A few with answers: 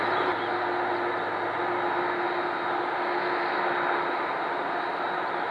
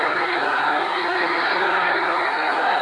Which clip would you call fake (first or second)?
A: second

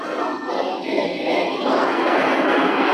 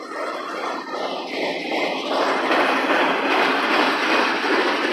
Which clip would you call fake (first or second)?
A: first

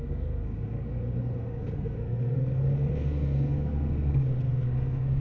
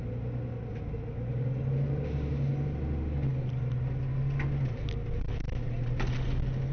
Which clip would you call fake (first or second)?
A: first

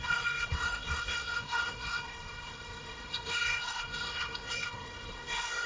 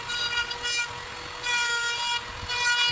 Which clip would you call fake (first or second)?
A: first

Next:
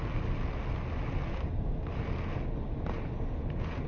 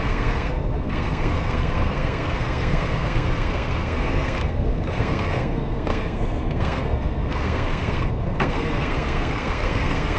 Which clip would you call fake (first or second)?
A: second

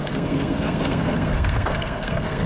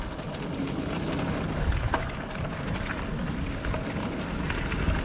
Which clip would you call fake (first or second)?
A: first